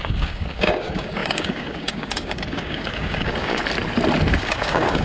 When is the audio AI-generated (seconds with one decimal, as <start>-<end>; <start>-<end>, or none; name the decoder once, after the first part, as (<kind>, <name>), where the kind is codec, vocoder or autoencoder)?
0.0-3.6 (codec, DAC); 4.3-5.0